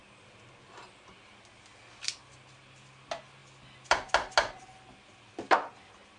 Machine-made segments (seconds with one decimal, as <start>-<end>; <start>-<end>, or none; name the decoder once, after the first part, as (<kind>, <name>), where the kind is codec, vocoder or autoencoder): none